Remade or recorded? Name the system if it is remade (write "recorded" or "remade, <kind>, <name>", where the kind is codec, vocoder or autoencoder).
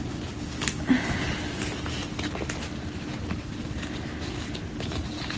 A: recorded